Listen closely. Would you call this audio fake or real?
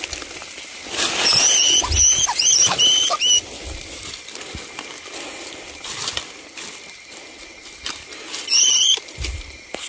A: real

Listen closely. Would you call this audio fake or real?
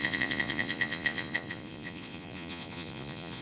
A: fake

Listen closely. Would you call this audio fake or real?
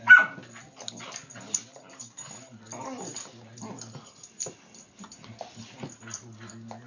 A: real